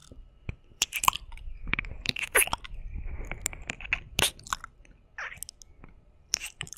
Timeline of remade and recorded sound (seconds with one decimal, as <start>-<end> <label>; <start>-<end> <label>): 0.0-0.6 recorded; 0.6-2.4 remade; 2.4-5.7 recorded; 5.7-6.8 remade